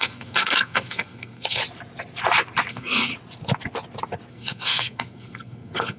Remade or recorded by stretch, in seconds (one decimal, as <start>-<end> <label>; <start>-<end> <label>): 0.0-1.6 remade; 1.6-2.7 recorded; 2.7-3.1 remade; 3.1-4.3 recorded; 4.3-6.0 remade